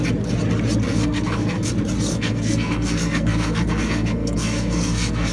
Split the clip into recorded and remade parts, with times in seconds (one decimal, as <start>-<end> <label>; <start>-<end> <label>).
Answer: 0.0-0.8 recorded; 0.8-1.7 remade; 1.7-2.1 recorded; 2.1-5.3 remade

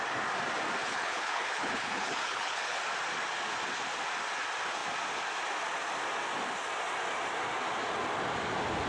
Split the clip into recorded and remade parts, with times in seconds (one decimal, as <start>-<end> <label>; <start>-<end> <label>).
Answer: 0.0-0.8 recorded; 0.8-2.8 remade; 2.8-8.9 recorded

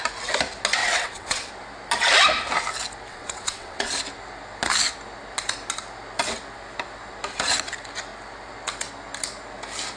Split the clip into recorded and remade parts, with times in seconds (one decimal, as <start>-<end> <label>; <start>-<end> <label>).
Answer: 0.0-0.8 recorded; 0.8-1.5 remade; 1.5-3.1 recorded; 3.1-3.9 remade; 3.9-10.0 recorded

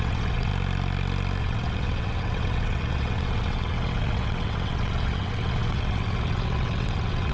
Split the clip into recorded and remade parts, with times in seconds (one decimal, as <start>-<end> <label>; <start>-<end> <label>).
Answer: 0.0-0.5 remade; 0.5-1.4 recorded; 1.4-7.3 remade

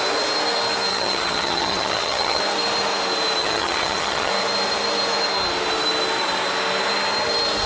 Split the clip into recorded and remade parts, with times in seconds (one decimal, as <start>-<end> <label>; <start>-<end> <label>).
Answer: 0.0-0.9 recorded; 0.9-2.4 remade; 2.4-3.4 recorded; 3.4-4.3 remade; 4.3-7.7 recorded

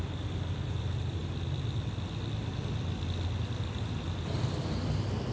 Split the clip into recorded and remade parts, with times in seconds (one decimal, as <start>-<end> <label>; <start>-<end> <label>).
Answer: 0.0-5.3 recorded